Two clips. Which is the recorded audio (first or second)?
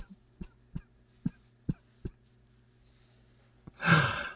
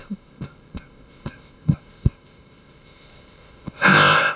first